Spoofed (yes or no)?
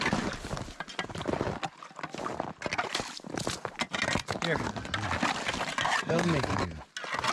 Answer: no